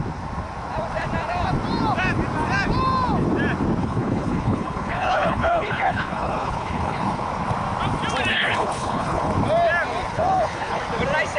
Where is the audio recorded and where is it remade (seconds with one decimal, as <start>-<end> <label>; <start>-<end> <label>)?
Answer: 0.0-3.8 recorded; 3.8-7.2 remade; 7.2-8.3 recorded; 8.3-9.3 remade; 9.3-10.1 recorded; 10.1-10.8 remade; 10.8-11.4 recorded